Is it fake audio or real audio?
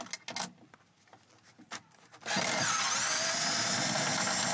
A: real